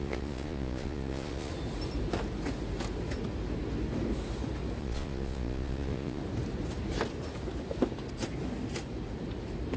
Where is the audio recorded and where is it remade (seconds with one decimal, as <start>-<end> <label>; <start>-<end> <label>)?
0.0-1.5 remade; 1.5-4.8 recorded; 4.8-6.2 remade; 6.2-9.8 recorded